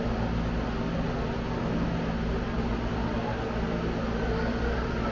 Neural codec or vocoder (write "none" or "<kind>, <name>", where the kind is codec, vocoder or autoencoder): none